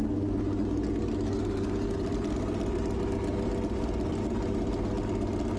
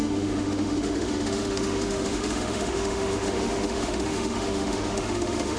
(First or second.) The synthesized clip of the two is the second